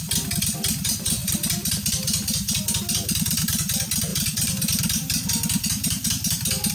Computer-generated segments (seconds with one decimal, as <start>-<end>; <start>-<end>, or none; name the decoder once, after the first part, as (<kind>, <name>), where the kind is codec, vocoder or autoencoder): 4.1-6.7 (vocoder, BigVGAN v2)